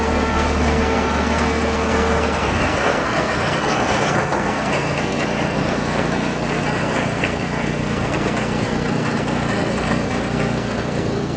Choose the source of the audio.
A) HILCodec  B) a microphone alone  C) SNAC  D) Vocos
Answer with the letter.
C